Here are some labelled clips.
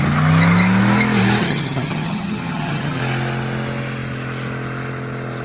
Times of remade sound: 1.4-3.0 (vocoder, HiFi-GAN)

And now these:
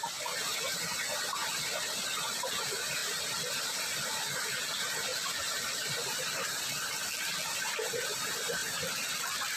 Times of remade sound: 3.0-3.8 (vocoder, BigVGAN v2); 5.1-6.7

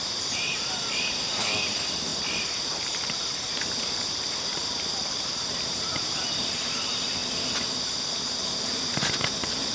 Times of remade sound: 0.0-9.7 (vocoder, BigVGAN v2)